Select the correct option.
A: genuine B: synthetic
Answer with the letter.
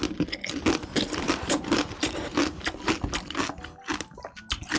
A